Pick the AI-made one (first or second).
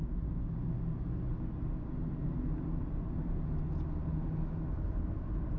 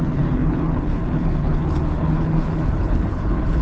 second